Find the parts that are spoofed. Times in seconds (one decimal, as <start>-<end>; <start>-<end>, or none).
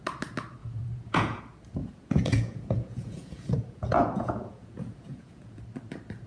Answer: 0.6-1.4; 1.8-5.6